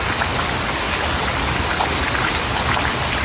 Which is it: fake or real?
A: real